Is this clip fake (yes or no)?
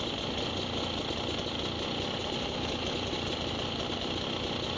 no